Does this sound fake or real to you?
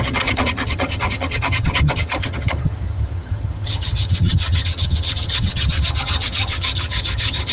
fake